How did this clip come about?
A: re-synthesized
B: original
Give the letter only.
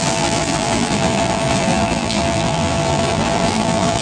A